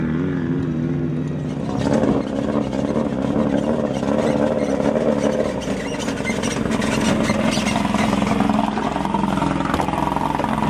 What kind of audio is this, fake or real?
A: real